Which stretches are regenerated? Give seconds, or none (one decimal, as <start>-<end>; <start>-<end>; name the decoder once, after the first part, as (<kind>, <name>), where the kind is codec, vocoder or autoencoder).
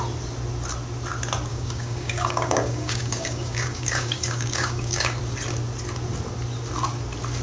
1.5-5.2 (codec, DAC)